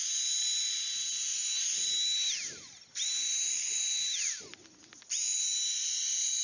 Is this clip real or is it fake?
real